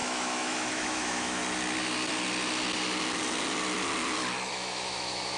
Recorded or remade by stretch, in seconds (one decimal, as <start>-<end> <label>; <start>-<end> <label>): 0.0-1.4 remade; 1.4-4.5 recorded; 4.5-5.4 remade